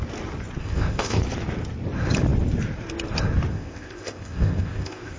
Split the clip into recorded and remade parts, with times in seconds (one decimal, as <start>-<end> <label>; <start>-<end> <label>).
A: 0.0-0.6 recorded; 0.6-1.2 remade; 1.2-3.5 recorded; 3.5-5.2 remade